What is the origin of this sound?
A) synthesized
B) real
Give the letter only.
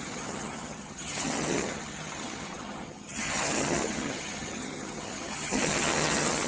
A